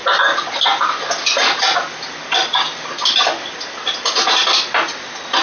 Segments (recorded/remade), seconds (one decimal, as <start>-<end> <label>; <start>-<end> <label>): 0.0-5.4 recorded